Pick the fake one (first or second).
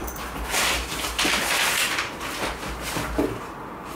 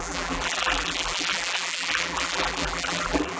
second